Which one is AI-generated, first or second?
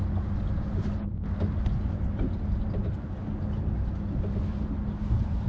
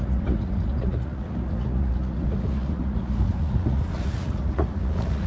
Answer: second